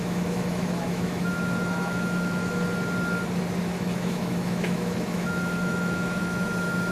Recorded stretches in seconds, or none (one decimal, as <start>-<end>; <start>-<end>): 2.6-3.6